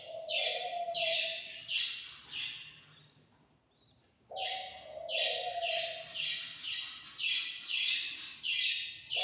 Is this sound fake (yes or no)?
no